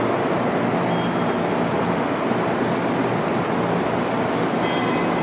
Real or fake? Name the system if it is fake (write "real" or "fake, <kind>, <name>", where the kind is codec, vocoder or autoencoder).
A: real